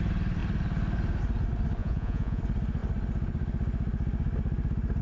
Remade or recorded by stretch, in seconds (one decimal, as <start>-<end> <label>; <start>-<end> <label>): 0.0-1.8 recorded; 1.8-2.4 remade; 2.4-5.0 recorded